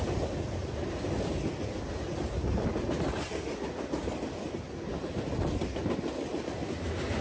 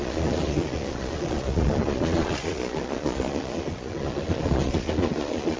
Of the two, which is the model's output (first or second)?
second